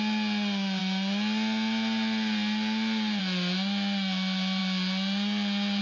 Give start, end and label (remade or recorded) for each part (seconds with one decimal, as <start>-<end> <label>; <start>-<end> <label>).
0.0-5.8 recorded